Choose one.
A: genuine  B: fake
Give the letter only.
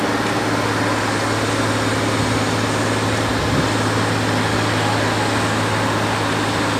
A